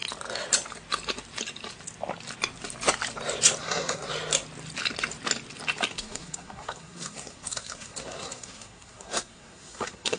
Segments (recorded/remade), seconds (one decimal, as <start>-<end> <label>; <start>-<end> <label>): 0.0-3.6 recorded; 3.6-4.1 remade; 4.1-5.9 recorded; 5.9-10.2 remade